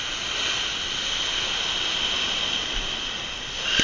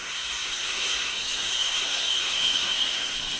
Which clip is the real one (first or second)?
first